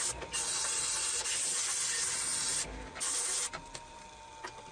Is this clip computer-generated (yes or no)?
no